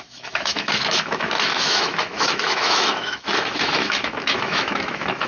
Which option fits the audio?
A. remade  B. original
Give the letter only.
A